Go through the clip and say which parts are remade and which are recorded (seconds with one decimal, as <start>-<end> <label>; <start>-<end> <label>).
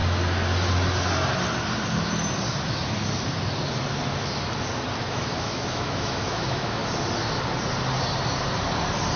0.0-5.1 recorded; 5.1-6.8 remade; 6.8-9.2 recorded